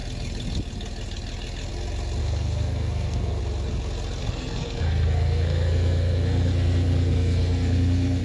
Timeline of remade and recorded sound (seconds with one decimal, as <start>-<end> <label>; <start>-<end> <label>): 0.0-2.2 recorded; 2.2-3.4 remade; 3.4-4.2 recorded; 4.2-8.2 remade